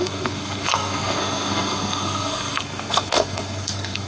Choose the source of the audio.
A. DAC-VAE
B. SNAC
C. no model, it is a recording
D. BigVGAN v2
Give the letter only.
B